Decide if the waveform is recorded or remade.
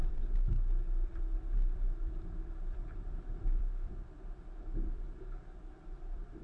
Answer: remade